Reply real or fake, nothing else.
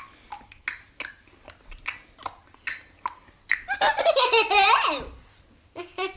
real